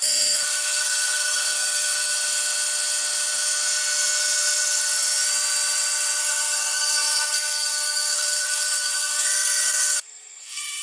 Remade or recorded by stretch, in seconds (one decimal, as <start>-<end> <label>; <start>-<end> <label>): 0.0-2.1 remade; 2.1-6.2 recorded; 6.2-10.8 remade